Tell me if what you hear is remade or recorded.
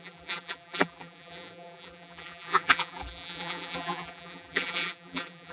remade